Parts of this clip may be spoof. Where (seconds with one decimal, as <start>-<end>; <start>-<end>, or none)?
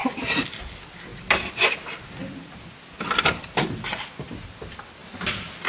none